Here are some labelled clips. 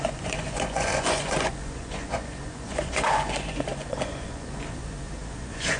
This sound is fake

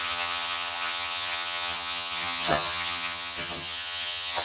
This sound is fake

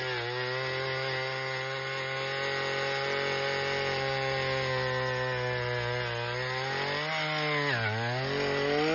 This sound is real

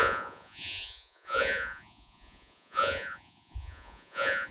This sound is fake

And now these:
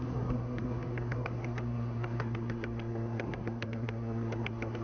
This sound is fake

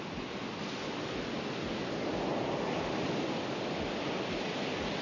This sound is real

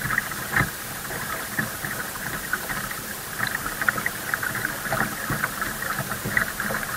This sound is fake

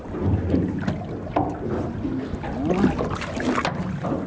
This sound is real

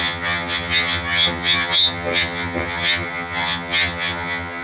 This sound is fake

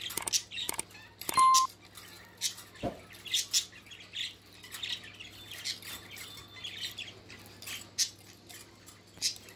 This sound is real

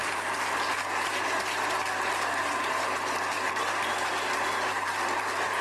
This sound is real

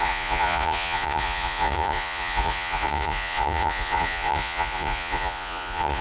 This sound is fake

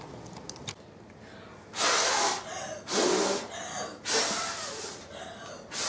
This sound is real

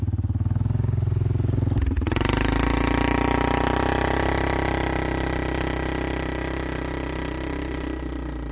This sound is real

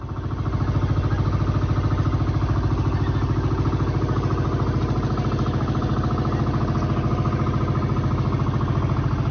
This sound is real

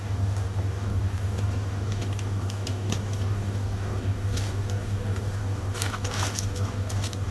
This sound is fake